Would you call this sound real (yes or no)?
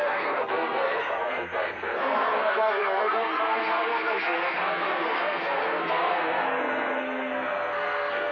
no